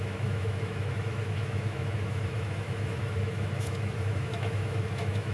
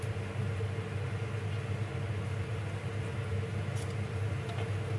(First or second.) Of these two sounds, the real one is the second